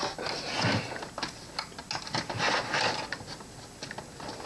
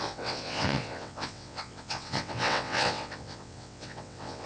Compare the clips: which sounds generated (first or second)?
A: second